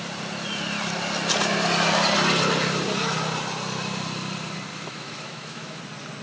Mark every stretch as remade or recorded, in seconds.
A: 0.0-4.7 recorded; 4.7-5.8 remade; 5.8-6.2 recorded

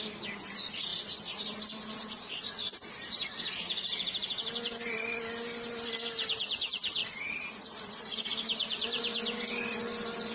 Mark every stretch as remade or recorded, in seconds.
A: 0.0-7.0 recorded; 7.0-8.1 remade; 8.1-10.3 recorded

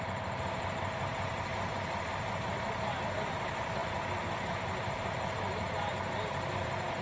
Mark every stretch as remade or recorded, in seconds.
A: 0.0-7.0 recorded

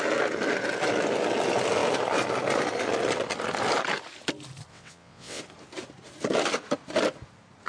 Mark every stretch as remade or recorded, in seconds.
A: 0.0-4.7 recorded; 4.7-5.4 remade; 5.4-7.7 recorded

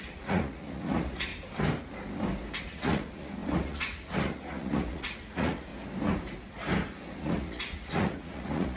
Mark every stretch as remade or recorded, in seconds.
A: 0.0-1.3 remade; 1.3-2.6 recorded; 2.6-5.7 remade; 5.7-7.2 recorded; 7.2-8.8 remade